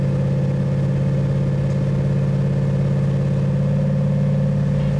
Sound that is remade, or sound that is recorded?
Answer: recorded